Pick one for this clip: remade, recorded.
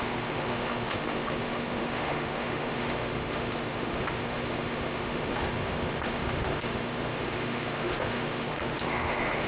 remade